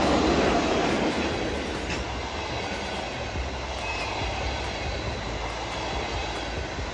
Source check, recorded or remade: recorded